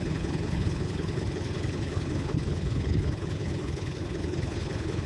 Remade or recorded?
remade